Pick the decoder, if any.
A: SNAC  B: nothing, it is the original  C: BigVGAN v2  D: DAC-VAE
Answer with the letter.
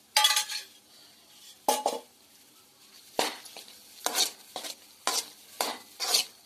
B